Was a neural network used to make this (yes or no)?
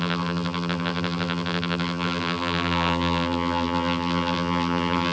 yes